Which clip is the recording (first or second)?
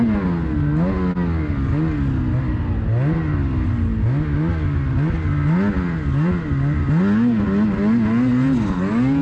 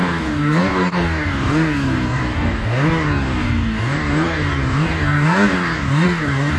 first